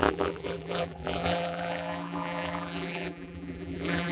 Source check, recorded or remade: remade